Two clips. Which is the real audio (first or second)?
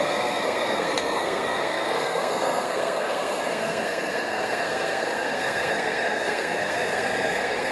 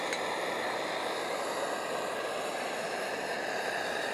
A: second